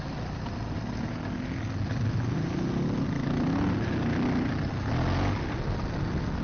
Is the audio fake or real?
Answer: real